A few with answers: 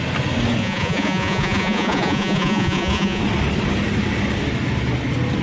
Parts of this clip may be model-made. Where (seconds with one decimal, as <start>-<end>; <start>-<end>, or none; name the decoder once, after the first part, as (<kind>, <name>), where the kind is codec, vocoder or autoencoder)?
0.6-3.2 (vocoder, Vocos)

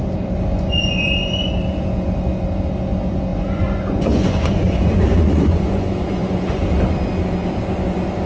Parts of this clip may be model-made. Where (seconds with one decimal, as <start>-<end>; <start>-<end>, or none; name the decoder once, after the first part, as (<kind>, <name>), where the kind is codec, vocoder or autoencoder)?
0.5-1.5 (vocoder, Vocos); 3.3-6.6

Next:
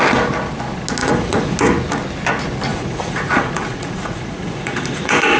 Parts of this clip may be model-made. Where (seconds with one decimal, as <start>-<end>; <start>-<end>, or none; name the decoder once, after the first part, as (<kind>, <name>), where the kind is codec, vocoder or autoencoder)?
1.0-1.6 (vocoder, Vocos); 2.7-5.4

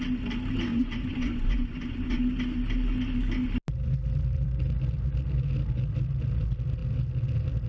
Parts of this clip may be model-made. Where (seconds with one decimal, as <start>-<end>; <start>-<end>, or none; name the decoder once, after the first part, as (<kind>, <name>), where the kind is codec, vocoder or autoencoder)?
0.7-2.2 (vocoder, Vocos)